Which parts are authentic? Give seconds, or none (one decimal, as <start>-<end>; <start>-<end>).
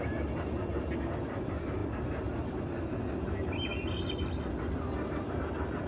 0.0-5.9